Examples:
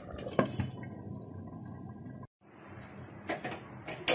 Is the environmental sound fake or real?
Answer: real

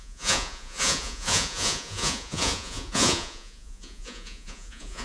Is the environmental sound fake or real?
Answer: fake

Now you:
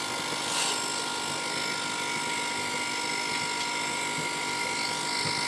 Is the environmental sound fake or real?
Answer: real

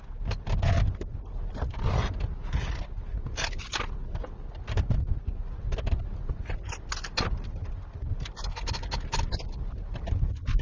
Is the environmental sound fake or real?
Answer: real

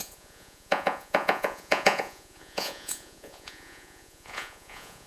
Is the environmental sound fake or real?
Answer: fake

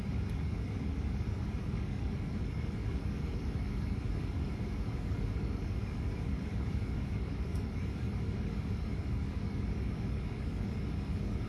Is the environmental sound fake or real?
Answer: fake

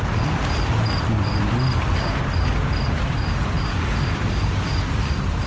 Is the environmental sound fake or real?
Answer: real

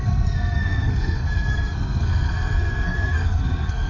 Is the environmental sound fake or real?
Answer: fake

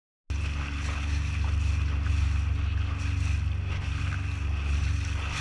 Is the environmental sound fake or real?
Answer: real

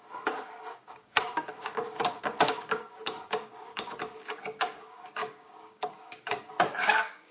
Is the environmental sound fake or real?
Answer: fake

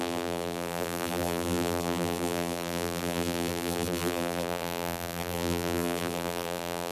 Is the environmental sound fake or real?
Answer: fake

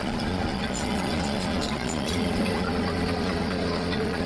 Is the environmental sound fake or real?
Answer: fake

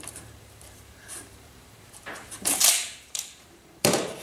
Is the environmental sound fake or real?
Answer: fake